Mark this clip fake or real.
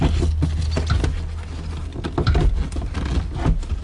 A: real